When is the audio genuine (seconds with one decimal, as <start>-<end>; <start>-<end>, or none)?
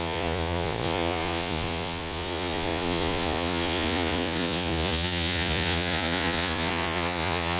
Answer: none